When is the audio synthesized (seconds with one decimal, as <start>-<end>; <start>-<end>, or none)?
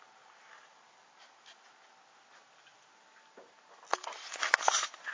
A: none